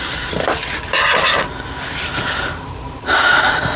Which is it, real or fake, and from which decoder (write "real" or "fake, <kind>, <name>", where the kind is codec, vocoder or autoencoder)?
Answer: real